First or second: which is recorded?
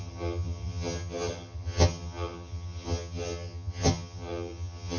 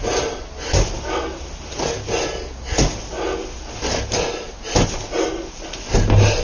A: second